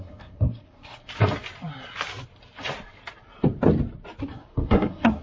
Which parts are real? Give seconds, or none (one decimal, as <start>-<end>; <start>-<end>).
1.1-4.2